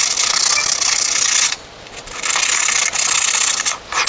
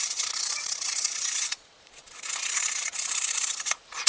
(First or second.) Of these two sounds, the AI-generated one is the second